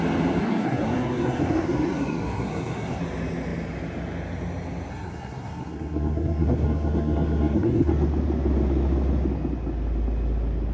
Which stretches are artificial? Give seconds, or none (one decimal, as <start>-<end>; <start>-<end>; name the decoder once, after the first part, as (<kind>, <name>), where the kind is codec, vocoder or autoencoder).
0.4-3.0 (codec, SNAC); 4.9-7.9